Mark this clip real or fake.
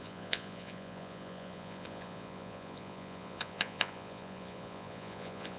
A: fake